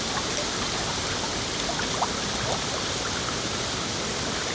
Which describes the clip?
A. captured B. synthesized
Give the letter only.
A